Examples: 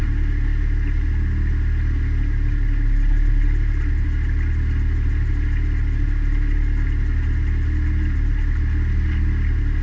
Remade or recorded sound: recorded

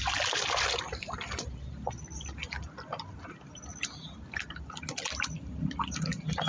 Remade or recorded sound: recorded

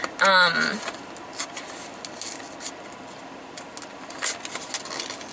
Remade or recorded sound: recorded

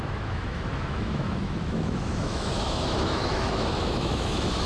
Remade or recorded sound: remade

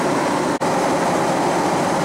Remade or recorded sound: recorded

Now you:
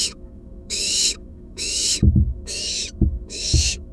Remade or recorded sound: remade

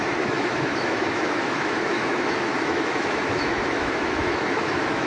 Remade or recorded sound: remade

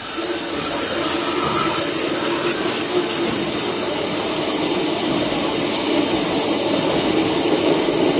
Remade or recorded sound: recorded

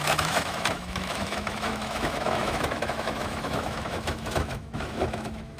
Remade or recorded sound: remade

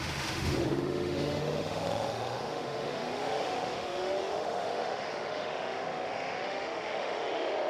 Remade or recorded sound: remade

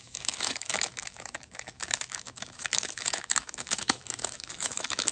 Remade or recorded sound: remade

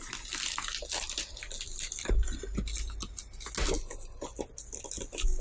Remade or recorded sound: recorded